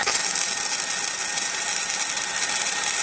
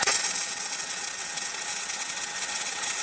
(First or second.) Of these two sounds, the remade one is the second